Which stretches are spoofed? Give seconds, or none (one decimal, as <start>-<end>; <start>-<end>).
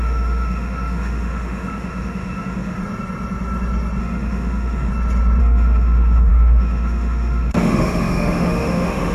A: 0.0-2.8; 4.0-4.9; 5.4-9.1